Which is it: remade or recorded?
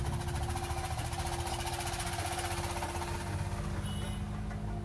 recorded